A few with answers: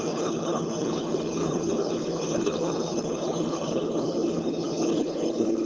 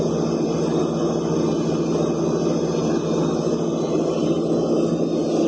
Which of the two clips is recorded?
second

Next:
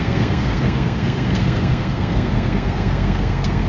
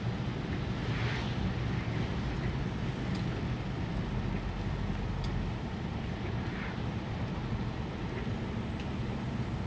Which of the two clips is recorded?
second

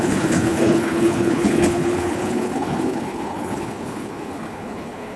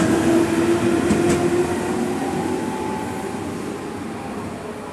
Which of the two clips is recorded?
second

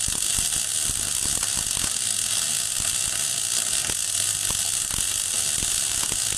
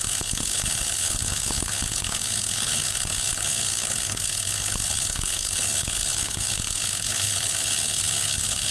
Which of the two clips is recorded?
first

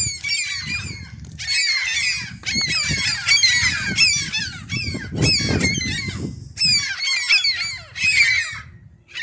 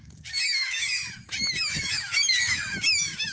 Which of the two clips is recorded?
first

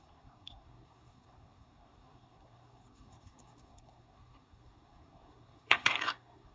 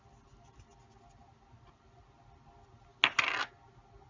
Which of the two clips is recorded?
second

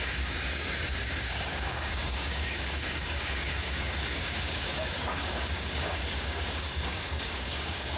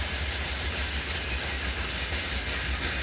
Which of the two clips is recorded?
second